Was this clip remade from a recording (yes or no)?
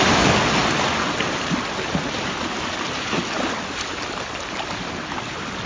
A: no